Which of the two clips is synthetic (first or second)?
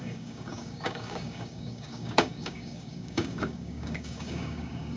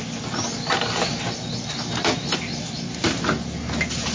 first